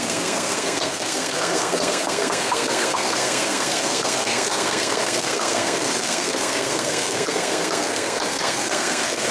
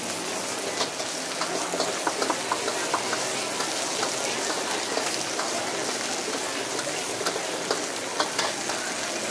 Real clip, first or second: second